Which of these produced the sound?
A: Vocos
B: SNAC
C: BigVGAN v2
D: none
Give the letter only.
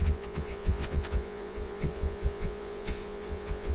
A